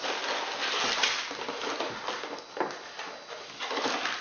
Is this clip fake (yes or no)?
no